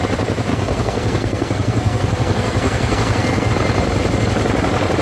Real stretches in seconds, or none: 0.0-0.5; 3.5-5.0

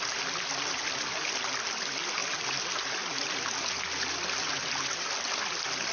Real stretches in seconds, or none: 0.0-5.9